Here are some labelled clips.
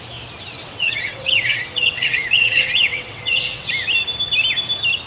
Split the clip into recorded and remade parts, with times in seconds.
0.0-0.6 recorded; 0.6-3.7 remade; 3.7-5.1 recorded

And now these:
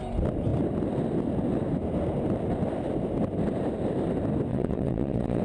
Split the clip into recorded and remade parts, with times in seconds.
0.0-4.5 recorded; 4.5-5.4 remade

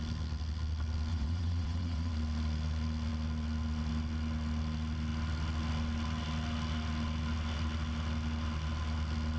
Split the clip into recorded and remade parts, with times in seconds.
0.0-1.1 recorded; 1.1-2.1 remade; 2.1-9.4 recorded

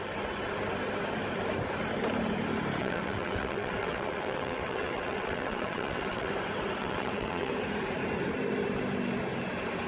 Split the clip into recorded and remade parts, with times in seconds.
0.0-2.8 recorded; 2.8-6.3 remade; 6.3-6.8 recorded; 6.8-7.5 remade; 7.5-9.9 recorded

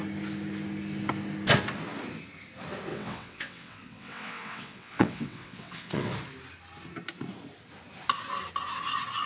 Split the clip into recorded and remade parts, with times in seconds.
0.0-2.9 recorded; 2.9-6.1 remade; 6.1-9.3 recorded

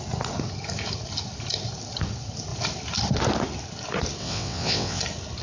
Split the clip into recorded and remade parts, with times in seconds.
0.0-4.2 recorded; 4.2-5.0 remade; 5.0-5.4 recorded

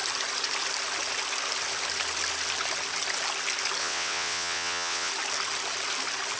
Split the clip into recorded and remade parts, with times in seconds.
0.0-3.8 recorded; 3.8-5.1 remade; 5.1-6.4 recorded